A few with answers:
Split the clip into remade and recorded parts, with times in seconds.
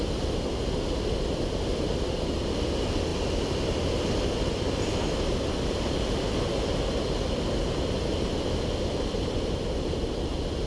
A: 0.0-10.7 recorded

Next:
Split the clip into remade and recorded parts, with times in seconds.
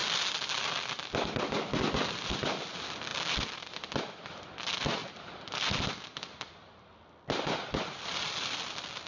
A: 0.0-9.1 recorded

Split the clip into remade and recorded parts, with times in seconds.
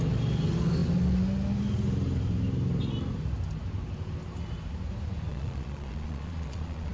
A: 0.0-5.3 recorded; 5.3-6.9 remade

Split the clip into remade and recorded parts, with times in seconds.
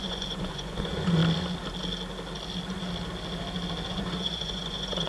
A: 0.0-1.2 remade; 1.2-3.9 recorded; 3.9-5.1 remade